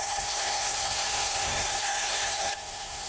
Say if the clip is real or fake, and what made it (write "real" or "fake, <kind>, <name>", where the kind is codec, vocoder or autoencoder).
fake, codec, SNAC